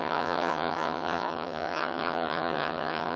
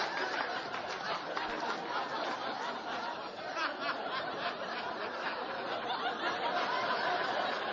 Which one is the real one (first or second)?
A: second